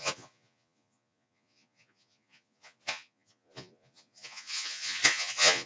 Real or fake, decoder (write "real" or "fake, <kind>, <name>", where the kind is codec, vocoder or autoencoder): fake, vocoder, Vocos